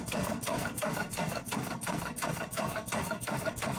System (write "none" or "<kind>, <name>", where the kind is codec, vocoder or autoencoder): codec, SNAC